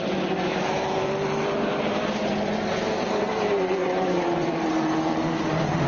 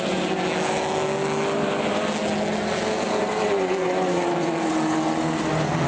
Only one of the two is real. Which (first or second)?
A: second